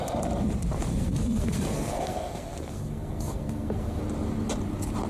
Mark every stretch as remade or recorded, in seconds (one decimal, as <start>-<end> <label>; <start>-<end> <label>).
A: 0.0-0.9 recorded; 0.9-4.0 remade; 4.0-5.1 recorded